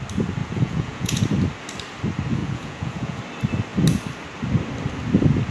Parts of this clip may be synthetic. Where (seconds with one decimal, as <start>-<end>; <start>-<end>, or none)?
0.4-1.2; 2.4-3.2